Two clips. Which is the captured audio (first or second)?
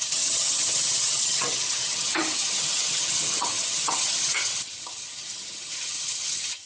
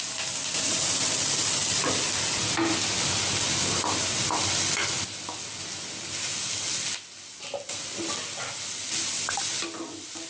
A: second